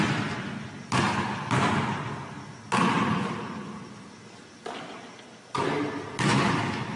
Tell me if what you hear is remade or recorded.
recorded